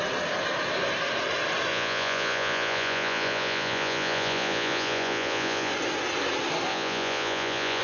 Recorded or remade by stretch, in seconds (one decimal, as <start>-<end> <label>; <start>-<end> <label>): 0.0-1.7 recorded; 1.7-5.7 remade; 5.7-6.7 recorded; 6.7-7.8 remade